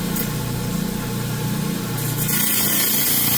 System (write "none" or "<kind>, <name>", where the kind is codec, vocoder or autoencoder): none